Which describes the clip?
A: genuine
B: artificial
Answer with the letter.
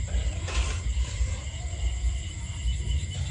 A